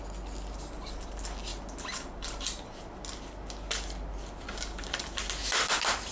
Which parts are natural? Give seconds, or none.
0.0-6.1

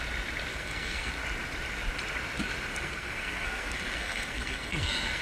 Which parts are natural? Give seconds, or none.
0.0-0.5; 1.1-2.7

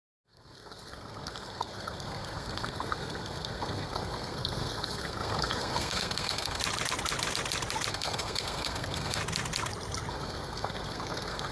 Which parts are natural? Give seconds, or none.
6.6-7.9; 9.2-10.1

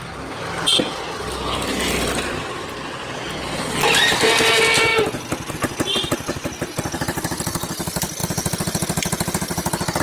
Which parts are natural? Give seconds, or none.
0.0-10.0

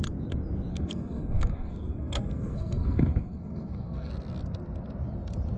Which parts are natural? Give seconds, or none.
0.0-0.7; 4.1-5.6

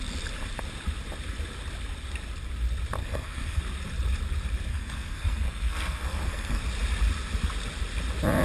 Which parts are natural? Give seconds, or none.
0.0-3.0; 3.6-4.7; 6.6-8.4

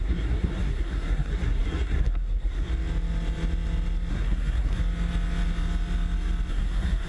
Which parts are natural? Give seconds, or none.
2.7-4.1; 4.8-6.5

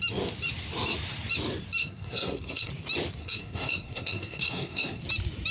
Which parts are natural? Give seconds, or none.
0.0-1.8; 2.7-3.2; 5.0-5.5